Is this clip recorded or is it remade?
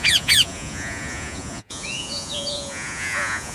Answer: remade